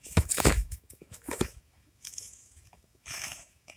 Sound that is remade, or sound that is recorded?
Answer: remade